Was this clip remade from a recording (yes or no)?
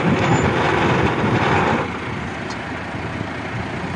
no